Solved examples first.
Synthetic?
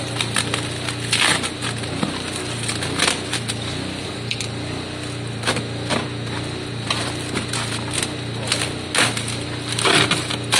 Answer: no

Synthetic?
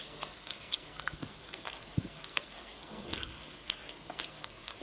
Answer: yes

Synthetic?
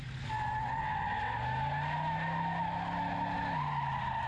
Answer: no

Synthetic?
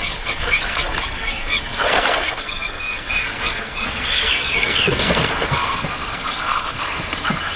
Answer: yes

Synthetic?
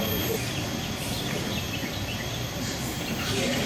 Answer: no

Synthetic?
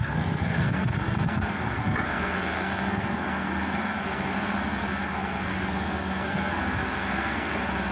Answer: yes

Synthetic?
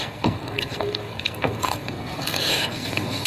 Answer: yes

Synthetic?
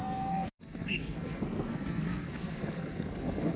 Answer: yes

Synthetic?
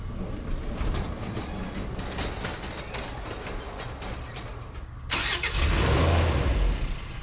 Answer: no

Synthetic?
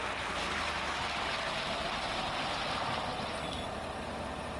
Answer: no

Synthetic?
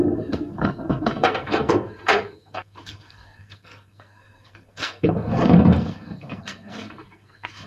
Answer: yes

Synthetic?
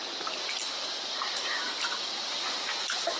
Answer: no